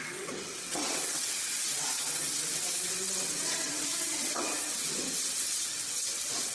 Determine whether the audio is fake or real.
fake